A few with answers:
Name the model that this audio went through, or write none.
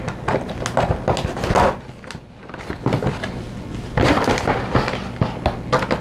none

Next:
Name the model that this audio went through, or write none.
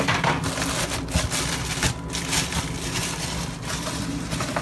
none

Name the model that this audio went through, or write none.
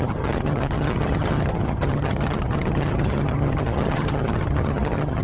vocoder, HiFi-GAN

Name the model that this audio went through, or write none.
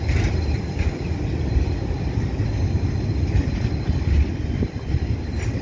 none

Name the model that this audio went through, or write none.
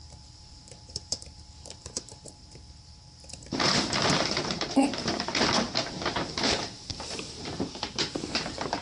vocoder, BigVGAN v2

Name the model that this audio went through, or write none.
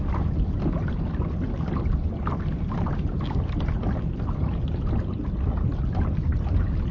none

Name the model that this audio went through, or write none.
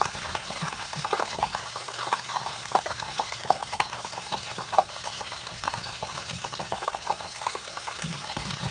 codec, SNAC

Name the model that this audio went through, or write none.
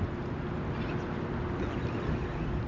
none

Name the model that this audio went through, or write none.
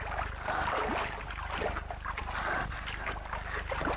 none